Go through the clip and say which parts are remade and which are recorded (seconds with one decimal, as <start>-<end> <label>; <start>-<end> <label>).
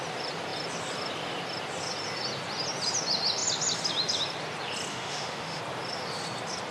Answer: 0.0-4.9 recorded; 4.9-5.6 remade; 5.6-6.7 recorded